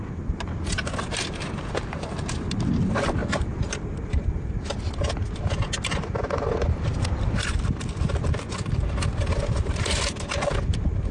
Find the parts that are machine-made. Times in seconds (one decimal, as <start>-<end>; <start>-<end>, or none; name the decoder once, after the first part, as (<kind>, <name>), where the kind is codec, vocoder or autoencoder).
3.2-4.3 (vocoder, BigVGAN v2)